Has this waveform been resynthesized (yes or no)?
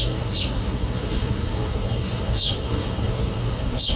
yes